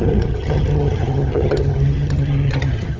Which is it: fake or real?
fake